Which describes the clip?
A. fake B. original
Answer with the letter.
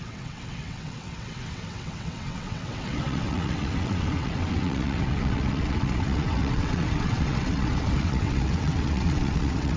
A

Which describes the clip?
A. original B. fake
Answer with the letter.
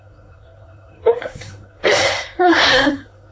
B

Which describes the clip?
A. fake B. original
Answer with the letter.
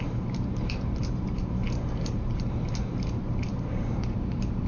A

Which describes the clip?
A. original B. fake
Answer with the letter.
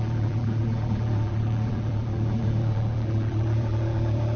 B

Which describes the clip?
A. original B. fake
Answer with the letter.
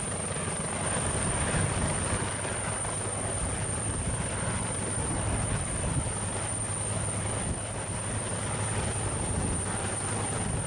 A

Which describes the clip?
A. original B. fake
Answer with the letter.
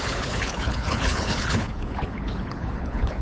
B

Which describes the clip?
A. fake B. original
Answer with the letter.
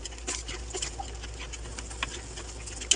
B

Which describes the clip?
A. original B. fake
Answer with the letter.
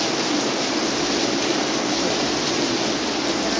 A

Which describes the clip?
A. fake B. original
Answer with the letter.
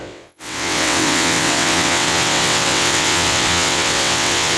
A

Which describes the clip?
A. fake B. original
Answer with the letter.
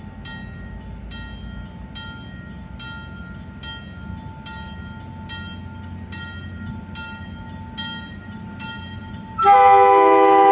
B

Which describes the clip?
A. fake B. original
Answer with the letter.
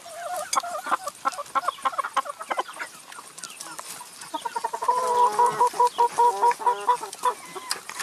B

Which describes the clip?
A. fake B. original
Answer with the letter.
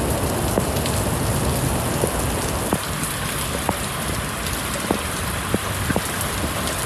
B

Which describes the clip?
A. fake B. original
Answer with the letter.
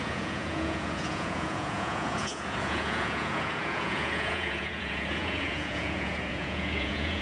A